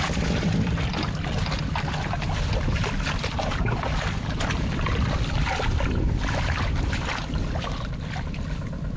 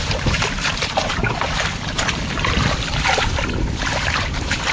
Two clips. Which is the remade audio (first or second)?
second